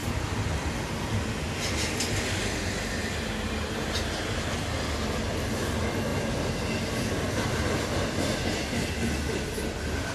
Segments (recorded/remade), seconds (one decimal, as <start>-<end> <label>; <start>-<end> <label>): 0.0-10.1 recorded